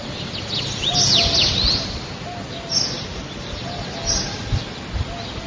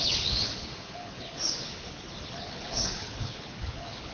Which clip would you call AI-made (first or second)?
second